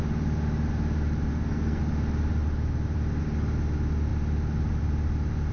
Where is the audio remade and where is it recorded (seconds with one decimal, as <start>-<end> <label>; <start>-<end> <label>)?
0.0-1.3 recorded; 1.3-1.8 remade; 1.8-5.5 recorded